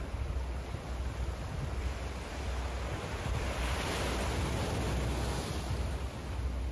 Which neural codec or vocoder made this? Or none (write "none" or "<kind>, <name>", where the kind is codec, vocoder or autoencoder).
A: none